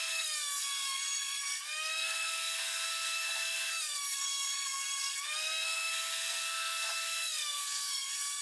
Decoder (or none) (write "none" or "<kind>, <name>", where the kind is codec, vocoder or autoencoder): codec, SNAC